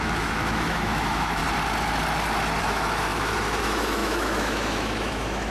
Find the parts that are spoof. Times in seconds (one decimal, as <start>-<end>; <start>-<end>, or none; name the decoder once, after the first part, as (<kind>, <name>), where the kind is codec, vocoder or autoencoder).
0.0-1.4 (autoencoder, DAC-VAE); 2.6-5.5